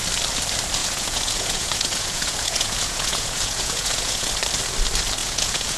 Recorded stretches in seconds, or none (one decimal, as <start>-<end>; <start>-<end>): 0.0-0.8; 4.3-5.2

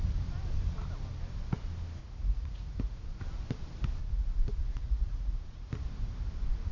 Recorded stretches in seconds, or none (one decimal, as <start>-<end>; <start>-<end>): 0.0-2.0; 3.2-4.0; 5.7-6.7